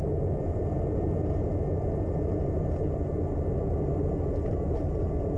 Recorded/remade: remade